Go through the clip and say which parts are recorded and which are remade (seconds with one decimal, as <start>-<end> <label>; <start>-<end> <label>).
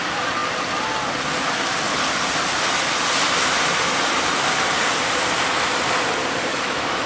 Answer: 0.0-6.5 recorded; 6.5-7.1 remade